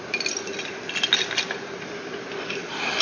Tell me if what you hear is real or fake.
real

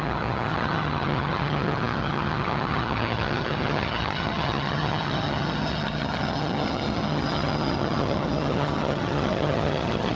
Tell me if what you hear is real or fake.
fake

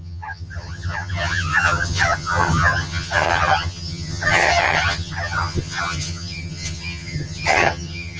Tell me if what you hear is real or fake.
fake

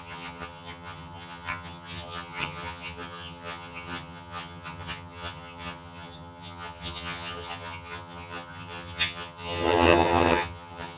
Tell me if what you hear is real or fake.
fake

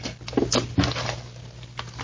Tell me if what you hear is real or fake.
real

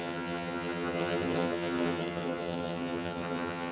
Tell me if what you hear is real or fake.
fake